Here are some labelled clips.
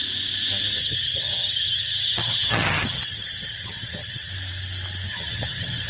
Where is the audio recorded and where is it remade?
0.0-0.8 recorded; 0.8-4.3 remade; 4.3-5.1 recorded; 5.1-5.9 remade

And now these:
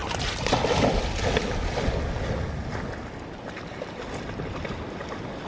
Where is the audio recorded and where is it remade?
0.0-5.5 recorded

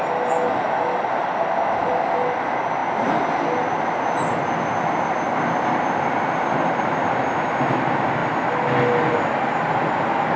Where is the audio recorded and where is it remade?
0.0-10.4 recorded

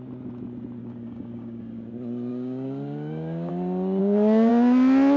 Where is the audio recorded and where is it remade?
0.0-0.8 recorded; 0.8-1.6 remade; 1.6-2.3 recorded; 2.3-3.5 remade; 3.5-4.0 recorded; 4.0-4.5 remade; 4.5-5.2 recorded

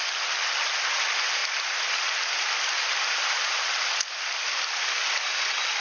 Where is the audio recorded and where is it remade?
0.0-5.8 recorded

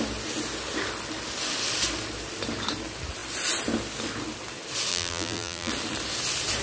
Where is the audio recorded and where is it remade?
0.0-4.9 recorded; 4.9-5.7 remade; 5.7-6.6 recorded

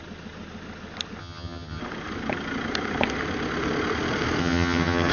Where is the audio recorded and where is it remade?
0.0-1.2 recorded; 1.2-1.8 remade; 1.8-4.4 recorded; 4.4-5.1 remade

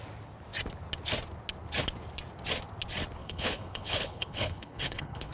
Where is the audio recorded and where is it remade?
0.0-3.2 recorded; 3.2-5.3 remade